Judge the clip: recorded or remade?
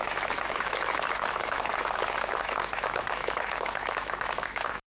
remade